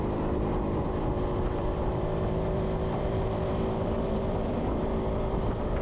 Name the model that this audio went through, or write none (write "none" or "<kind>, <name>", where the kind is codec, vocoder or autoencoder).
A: vocoder, BigVGAN v2